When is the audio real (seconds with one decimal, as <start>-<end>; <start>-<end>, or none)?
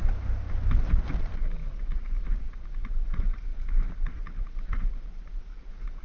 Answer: 0.0-6.0